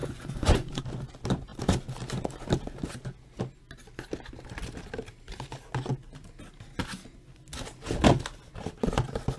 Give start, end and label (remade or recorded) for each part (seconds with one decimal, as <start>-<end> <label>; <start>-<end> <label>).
0.0-0.8 remade; 0.8-9.4 recorded